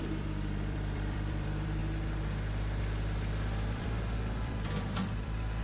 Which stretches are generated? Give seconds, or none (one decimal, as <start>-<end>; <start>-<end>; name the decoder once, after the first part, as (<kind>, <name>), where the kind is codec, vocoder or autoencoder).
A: 0.0-1.8 (vocoder, BigVGAN v2); 2.8-5.6